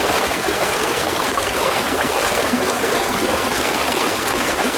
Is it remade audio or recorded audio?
remade